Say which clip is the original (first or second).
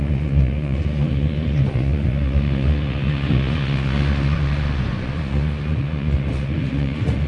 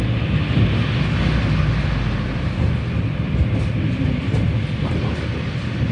second